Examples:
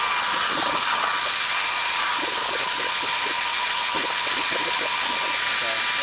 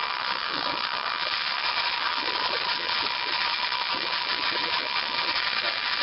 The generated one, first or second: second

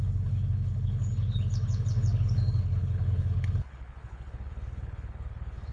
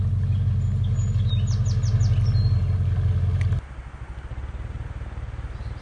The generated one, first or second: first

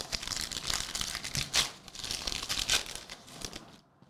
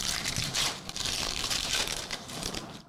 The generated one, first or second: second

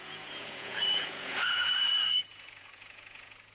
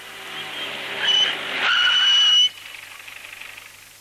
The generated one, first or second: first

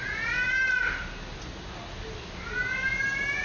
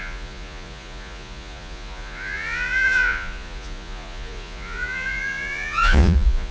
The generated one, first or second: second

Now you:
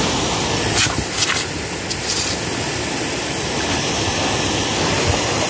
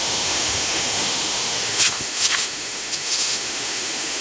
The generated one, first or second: second